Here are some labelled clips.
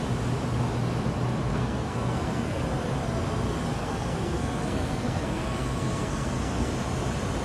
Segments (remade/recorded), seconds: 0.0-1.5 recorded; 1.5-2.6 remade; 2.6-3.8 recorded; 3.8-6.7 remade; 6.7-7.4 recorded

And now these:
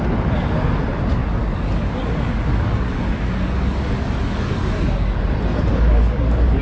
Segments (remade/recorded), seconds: 0.0-1.2 recorded; 1.2-5.2 remade; 5.2-5.7 recorded; 5.7-6.6 remade

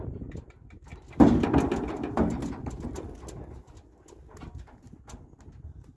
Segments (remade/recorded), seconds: 0.0-6.0 recorded

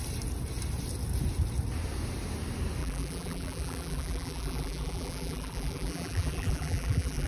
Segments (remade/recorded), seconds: 0.0-2.8 recorded; 2.8-7.3 remade

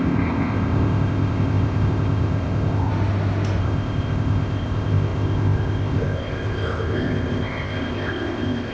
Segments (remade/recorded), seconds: 0.0-2.9 remade; 2.9-3.6 recorded; 3.6-8.7 remade

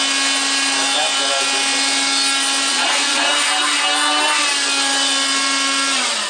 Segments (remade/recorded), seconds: 0.0-2.7 recorded; 2.7-3.3 remade; 3.3-6.3 recorded